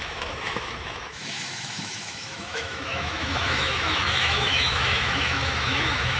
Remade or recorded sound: remade